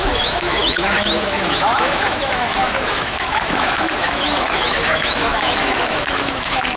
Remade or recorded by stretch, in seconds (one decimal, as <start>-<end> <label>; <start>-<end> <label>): 0.0-6.8 remade